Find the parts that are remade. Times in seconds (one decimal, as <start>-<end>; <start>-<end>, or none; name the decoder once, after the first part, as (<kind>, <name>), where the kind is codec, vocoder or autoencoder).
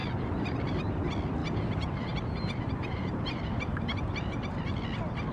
0.0-0.9 (vocoder, BigVGAN v2); 1.4-4.6